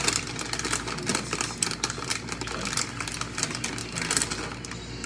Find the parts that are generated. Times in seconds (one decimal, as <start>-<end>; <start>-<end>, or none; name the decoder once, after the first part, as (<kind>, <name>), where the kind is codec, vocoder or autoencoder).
1.1-3.3 (vocoder, BigVGAN v2); 3.8-4.3